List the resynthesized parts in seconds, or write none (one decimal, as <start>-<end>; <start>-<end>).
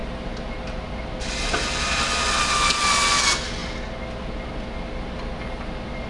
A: none